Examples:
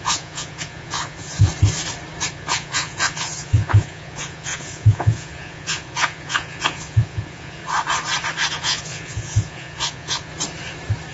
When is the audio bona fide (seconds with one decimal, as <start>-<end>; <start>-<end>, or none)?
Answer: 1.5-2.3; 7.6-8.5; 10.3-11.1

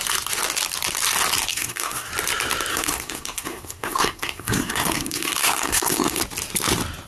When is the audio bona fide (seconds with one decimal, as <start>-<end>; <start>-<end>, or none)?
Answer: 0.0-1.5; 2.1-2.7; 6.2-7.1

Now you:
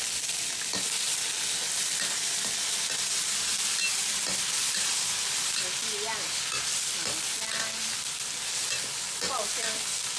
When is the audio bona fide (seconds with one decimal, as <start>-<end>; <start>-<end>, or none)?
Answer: 0.0-10.2

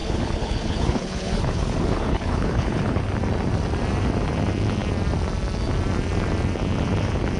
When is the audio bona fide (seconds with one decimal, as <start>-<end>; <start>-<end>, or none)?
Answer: 3.0-7.4

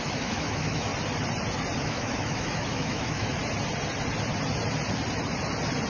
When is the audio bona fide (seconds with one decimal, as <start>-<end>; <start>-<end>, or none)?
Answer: 0.9-1.8; 3.4-5.9